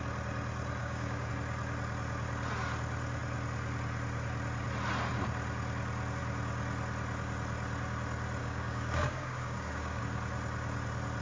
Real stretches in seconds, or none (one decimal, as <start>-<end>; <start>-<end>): 0.0-0.8; 1.3-8.4; 10.0-11.2